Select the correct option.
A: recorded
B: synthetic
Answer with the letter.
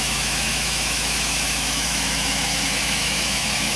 B